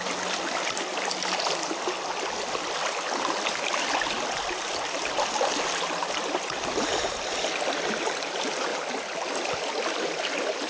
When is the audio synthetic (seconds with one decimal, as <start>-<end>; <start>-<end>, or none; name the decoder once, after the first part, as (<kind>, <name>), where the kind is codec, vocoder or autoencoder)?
none